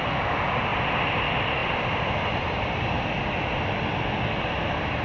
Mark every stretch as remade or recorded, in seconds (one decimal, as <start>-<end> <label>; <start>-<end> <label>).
0.0-5.0 recorded